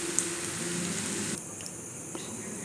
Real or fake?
real